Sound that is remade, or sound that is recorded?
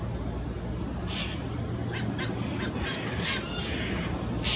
remade